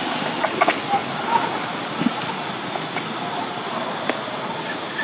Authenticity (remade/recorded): recorded